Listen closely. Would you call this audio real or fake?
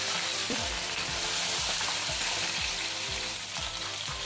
fake